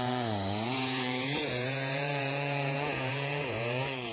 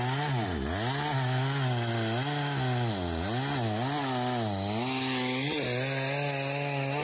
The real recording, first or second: second